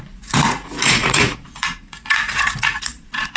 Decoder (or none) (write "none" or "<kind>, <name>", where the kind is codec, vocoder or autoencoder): vocoder, Vocos